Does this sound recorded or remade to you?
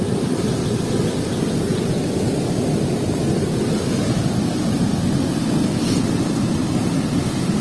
recorded